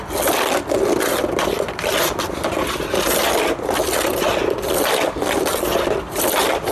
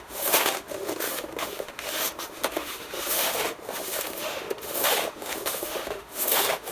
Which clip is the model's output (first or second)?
second